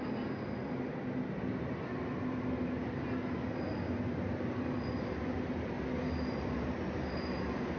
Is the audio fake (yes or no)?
no